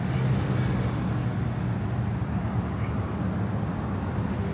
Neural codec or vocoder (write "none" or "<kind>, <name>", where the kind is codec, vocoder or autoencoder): none